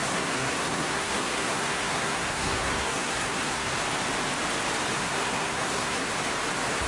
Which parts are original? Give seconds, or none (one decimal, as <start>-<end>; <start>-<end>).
3.7-5.0; 6.1-6.9